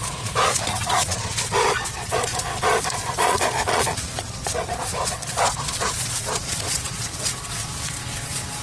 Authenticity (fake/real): fake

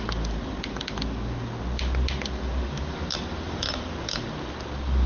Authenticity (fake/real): real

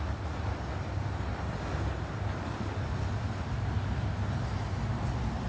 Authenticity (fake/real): real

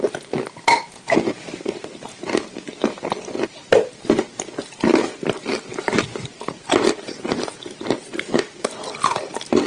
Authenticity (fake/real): real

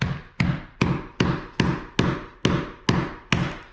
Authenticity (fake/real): real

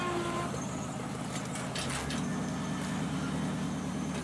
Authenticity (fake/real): real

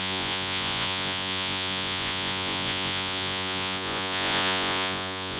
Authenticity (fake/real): fake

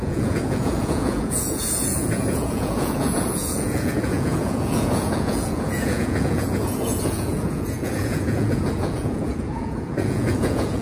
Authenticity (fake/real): fake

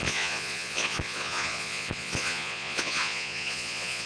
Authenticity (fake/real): fake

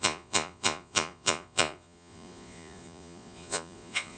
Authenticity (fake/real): fake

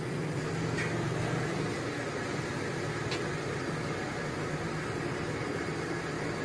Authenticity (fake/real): real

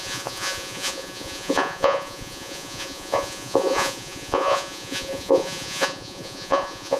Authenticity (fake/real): fake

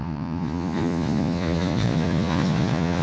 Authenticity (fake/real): fake